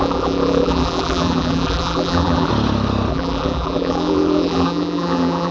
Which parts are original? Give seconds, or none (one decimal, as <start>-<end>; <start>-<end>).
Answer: 2.5-3.1